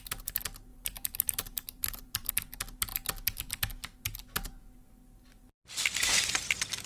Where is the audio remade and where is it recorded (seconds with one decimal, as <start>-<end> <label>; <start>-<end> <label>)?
0.0-0.7 recorded; 0.7-2.3 remade; 2.3-6.9 recorded